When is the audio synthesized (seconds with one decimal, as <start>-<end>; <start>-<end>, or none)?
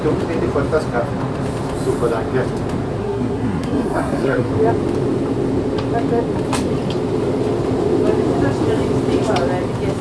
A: 3.0-4.5